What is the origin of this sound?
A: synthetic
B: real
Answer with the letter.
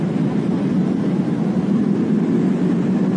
B